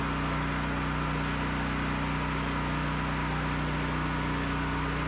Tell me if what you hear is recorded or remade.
recorded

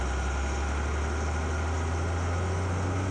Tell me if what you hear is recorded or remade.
recorded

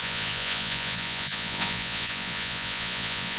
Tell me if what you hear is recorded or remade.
remade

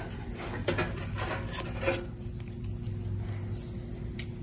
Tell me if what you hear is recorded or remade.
recorded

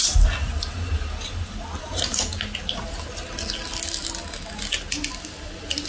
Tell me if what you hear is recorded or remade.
recorded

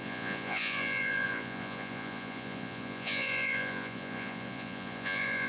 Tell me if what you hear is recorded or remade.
remade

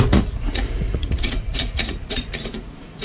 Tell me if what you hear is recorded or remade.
remade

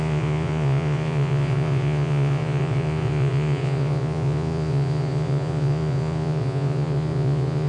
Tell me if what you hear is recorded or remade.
remade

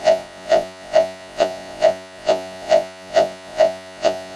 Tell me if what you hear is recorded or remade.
remade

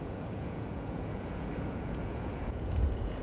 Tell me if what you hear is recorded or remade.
remade